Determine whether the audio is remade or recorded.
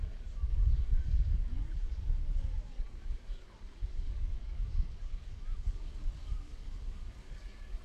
remade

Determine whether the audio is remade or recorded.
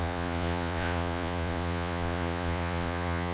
remade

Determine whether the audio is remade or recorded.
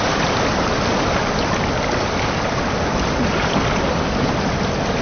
recorded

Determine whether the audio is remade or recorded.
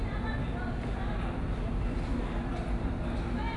recorded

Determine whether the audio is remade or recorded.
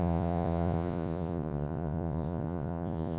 remade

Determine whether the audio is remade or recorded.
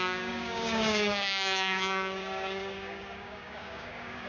remade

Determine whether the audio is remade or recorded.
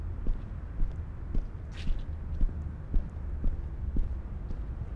recorded